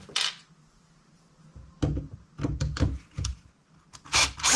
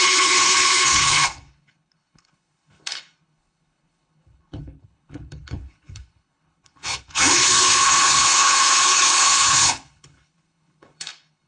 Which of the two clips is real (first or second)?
first